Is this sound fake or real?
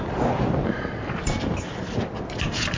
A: real